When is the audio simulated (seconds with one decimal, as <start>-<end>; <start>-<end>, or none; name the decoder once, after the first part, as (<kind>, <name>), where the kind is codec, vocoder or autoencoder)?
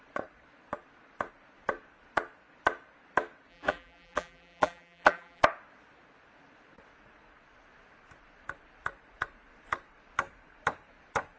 3.5-5.4 (vocoder, BigVGAN v2)